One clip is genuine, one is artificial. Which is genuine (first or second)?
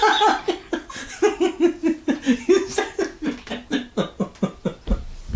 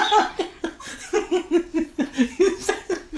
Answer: first